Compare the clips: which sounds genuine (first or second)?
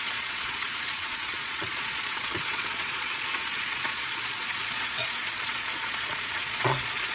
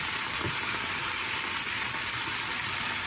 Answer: second